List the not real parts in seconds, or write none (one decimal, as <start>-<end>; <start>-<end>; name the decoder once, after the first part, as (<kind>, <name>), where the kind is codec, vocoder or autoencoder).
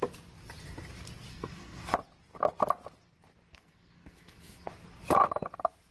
1.3-1.9 (codec, SNAC); 3.5-4.7